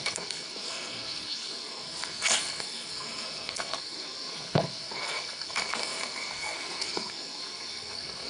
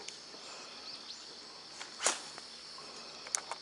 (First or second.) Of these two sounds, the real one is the second